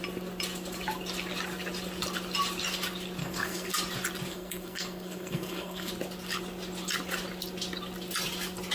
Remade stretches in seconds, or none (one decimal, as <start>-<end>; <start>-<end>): 3.2-3.7; 4.3-5.9